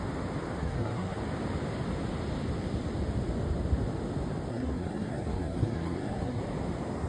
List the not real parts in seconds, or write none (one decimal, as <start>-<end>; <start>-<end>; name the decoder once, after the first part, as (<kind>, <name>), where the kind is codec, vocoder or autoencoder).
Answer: 0.6-1.2 (codec, SNAC); 4.5-6.4